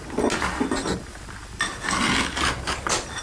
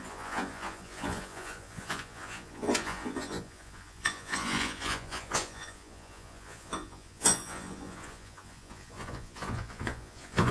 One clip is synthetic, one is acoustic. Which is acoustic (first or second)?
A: first